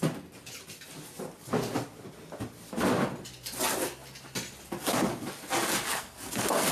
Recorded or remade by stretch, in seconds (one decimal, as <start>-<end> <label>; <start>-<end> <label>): 0.0-5.9 recorded; 5.9-6.7 remade

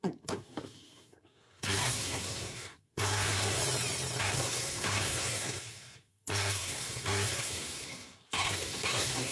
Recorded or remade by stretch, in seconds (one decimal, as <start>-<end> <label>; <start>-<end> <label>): 0.0-3.6 remade; 3.6-4.2 recorded; 4.2-9.3 remade

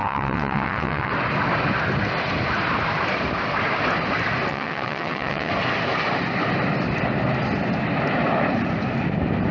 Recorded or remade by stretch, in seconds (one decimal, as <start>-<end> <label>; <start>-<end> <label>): 0.0-1.1 remade; 1.1-4.5 recorded; 4.5-5.5 remade; 5.5-9.5 recorded

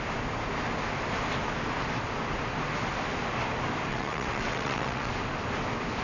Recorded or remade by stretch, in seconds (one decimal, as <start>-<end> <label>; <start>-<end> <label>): 0.0-3.9 recorded; 3.9-5.1 remade; 5.1-6.0 recorded

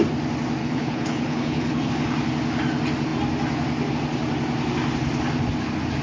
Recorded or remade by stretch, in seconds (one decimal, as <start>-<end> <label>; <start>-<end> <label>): 0.0-0.6 recorded; 0.6-1.9 remade; 1.9-6.0 recorded

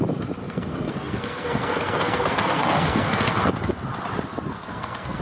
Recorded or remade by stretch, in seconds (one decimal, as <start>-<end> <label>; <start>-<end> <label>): 0.0-0.4 recorded; 0.4-3.5 remade; 3.5-4.5 recorded; 4.5-5.2 remade

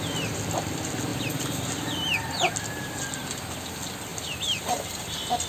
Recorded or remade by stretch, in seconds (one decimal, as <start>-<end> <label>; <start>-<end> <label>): 0.0-5.5 recorded